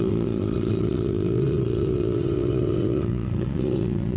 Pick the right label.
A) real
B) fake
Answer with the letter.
B